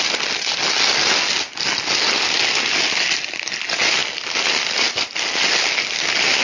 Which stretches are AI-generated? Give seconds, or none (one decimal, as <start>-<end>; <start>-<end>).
none